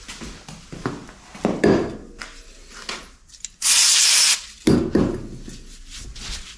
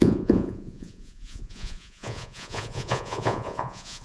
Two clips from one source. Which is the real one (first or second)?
first